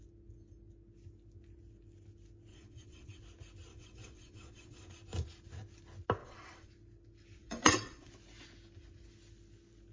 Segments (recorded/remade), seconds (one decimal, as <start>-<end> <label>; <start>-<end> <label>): 0.0-2.5 recorded; 2.5-3.2 remade; 3.2-3.7 recorded; 3.7-4.9 remade; 4.9-6.2 recorded; 6.2-6.7 remade; 6.7-7.4 recorded; 7.4-8.1 remade; 8.1-9.9 recorded